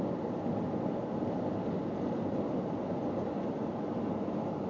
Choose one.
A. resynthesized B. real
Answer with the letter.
B